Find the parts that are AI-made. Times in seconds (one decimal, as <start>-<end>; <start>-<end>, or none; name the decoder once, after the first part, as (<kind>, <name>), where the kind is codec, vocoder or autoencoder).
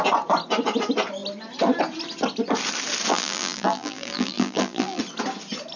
3.1-5.0 (vocoder, BigVGAN v2)